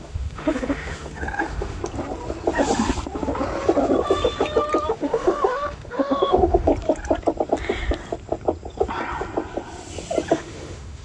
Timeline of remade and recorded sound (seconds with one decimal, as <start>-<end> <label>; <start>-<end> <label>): 0.0-1.8 remade; 1.8-4.9 recorded; 4.9-6.7 remade; 6.7-10.3 recorded; 10.3-11.0 remade